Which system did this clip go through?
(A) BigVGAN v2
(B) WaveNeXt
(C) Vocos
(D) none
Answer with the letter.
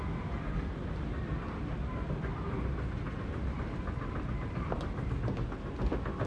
D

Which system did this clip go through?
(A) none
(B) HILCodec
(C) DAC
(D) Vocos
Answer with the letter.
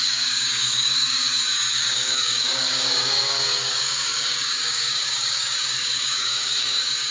C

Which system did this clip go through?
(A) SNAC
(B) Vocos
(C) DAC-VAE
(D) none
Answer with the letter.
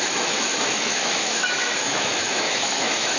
C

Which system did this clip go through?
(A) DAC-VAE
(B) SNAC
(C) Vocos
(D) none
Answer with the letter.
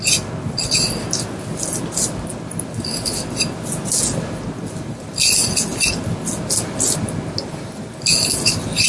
D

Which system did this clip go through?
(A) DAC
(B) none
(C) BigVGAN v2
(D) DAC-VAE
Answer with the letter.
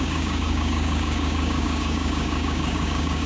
A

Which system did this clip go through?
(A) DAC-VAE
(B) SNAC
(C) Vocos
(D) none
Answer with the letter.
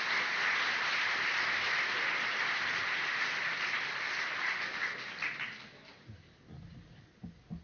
D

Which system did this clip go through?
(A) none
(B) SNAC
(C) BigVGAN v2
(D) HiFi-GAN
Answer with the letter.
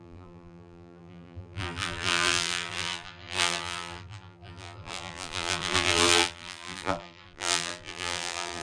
C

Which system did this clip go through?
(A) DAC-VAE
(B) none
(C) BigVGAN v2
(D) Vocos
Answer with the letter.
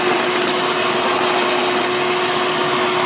B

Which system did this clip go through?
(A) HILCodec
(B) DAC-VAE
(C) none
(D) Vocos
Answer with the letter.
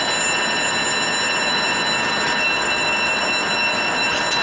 C